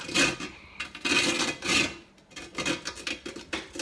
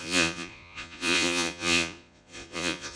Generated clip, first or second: second